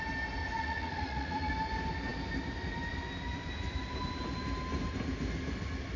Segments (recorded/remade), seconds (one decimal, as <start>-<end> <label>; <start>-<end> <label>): 0.0-0.4 recorded; 0.4-1.5 remade; 1.5-6.0 recorded